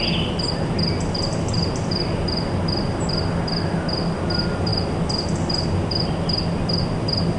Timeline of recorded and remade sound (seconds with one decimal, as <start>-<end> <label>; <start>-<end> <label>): 0.0-7.4 recorded